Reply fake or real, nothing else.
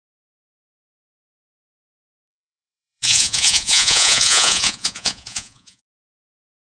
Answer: fake